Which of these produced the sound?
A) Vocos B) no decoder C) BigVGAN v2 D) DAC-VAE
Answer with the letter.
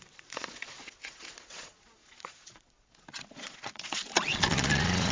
A